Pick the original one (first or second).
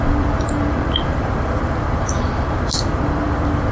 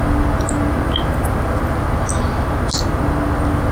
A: second